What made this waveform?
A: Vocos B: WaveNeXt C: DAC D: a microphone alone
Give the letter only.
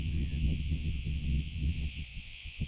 B